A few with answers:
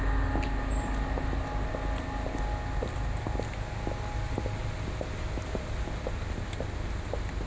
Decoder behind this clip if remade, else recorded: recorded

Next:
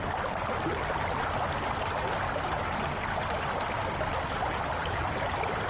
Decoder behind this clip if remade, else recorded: recorded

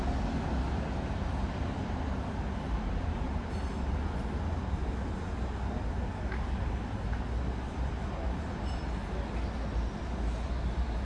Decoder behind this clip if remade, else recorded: recorded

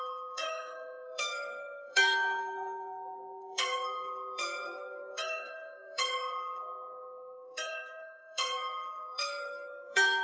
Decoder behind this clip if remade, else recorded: remade, codec, SNAC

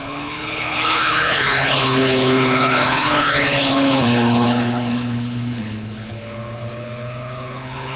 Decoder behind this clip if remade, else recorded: remade, codec, HILCodec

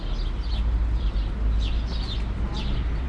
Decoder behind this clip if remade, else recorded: recorded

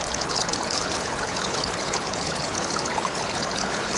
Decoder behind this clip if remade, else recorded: remade, codec, HILCodec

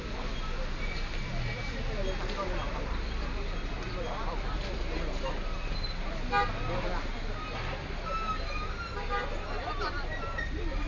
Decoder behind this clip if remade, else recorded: recorded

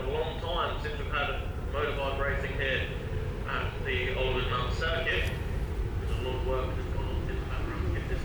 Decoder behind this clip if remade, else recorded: recorded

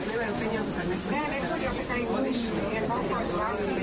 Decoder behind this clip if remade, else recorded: recorded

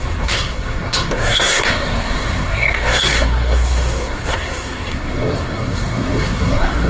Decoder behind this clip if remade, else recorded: remade, codec, SNAC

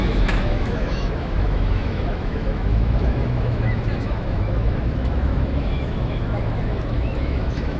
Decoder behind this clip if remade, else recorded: remade, autoencoder, DAC-VAE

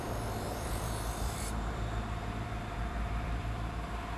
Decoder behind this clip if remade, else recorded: remade, vocoder, BigVGAN v2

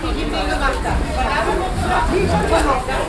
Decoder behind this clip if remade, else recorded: recorded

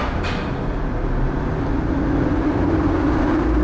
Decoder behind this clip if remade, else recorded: recorded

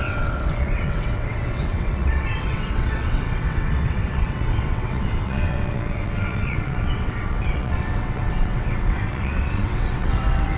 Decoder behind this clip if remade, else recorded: remade, vocoder, WaveNeXt